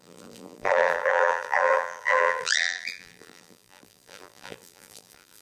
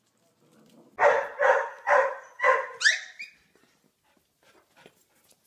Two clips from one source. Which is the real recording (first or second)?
second